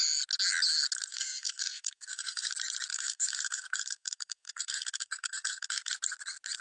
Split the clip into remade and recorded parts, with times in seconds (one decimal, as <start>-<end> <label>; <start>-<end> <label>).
0.0-1.1 recorded; 1.1-2.5 remade; 2.5-2.9 recorded; 2.9-5.9 remade; 5.9-6.6 recorded